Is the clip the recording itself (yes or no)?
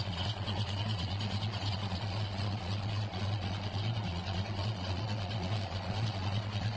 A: no